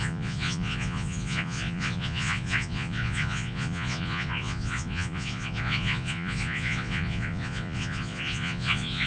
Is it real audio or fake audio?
fake